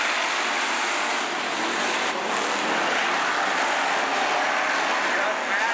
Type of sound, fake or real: real